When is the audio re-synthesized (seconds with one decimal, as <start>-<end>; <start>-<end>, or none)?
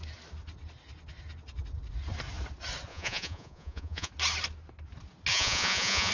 2.9-4.1; 5.3-6.1